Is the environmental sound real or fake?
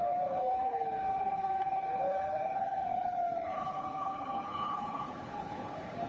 fake